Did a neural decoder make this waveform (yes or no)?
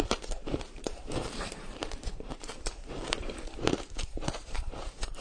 yes